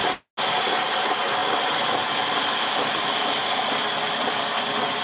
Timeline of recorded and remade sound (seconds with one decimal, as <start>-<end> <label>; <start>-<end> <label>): 0.0-5.0 recorded